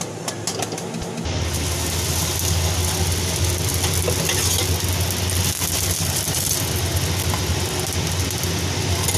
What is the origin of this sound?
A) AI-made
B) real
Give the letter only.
B